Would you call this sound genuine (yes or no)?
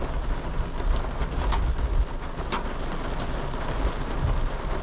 yes